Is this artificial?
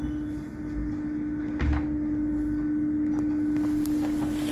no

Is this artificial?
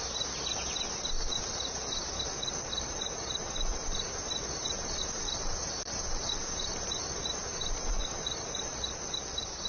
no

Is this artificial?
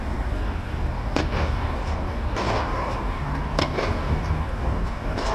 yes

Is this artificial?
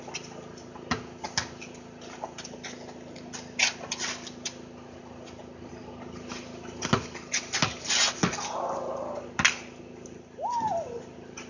no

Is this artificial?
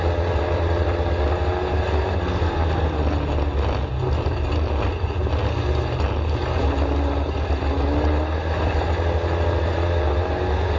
no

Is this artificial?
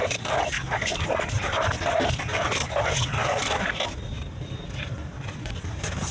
no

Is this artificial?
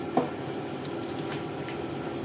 no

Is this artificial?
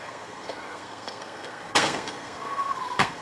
yes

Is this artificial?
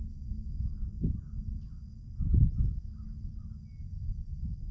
no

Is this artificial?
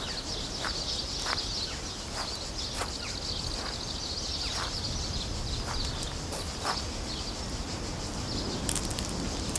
no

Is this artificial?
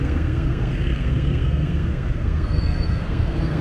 yes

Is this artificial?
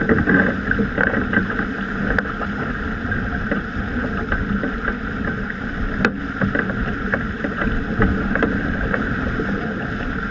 no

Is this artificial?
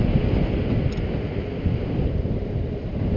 no